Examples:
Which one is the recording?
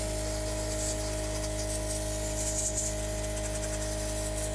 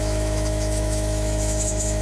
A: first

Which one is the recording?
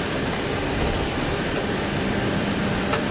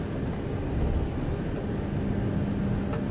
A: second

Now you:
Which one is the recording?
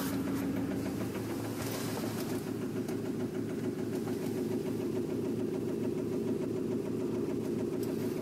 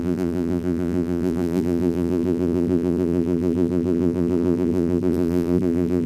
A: first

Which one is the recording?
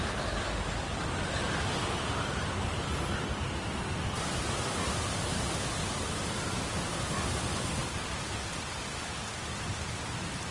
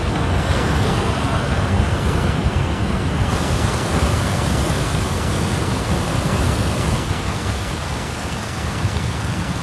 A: first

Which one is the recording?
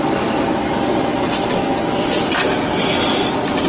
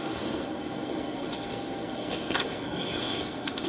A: first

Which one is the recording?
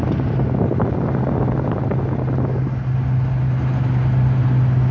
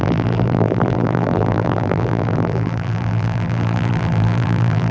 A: first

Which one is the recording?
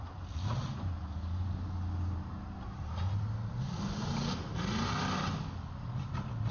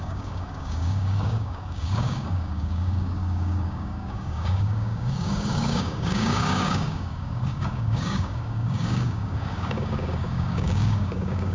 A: first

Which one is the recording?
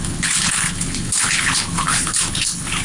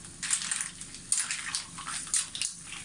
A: second